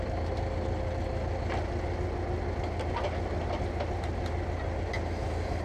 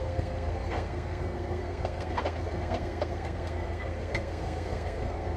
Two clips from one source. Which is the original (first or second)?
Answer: first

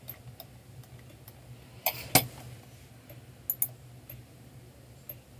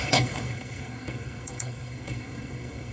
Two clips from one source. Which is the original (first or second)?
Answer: first